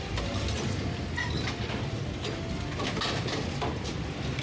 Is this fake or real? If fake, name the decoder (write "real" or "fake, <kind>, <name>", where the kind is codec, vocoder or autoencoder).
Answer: real